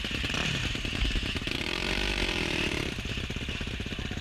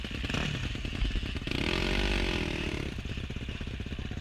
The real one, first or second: second